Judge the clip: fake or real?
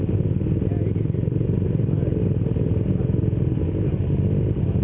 real